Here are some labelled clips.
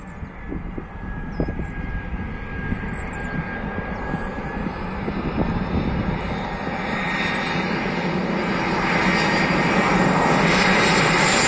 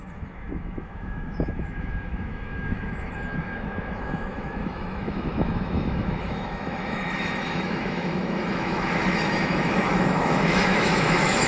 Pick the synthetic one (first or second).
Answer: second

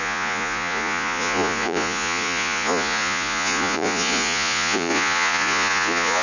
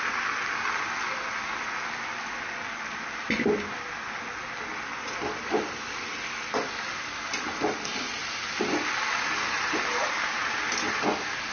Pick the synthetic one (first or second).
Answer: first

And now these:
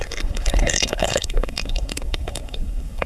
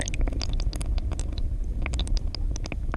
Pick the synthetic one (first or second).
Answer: first